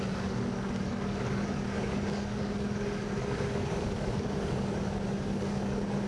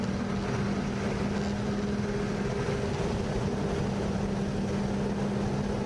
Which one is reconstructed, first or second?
first